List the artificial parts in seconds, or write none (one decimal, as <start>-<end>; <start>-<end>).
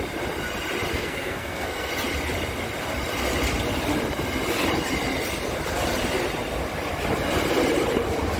0.9-1.9